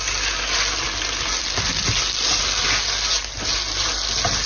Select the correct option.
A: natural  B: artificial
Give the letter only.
A